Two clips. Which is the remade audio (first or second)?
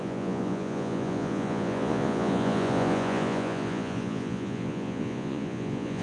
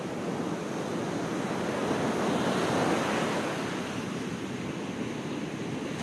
first